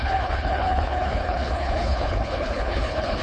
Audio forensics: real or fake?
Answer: fake